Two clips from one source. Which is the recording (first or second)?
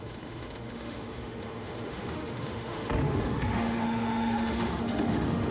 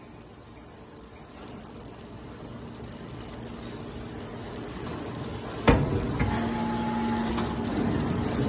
second